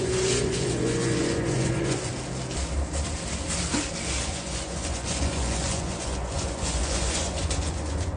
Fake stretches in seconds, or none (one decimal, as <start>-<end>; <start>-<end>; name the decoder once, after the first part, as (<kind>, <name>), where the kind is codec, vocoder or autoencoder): 0.0-2.1 (vocoder, Vocos); 4.2-8.2